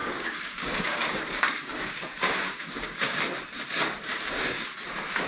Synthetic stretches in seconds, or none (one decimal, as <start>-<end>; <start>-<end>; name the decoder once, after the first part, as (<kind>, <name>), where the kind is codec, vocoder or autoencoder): 0.0-3.2 (codec, DAC); 4.1-4.7